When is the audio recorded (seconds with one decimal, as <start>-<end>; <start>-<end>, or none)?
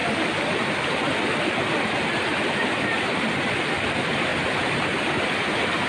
1.1-2.3; 3.6-5.9